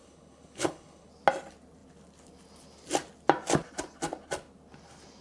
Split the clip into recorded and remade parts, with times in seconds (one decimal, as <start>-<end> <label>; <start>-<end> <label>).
0.0-1.1 remade; 1.1-5.2 recorded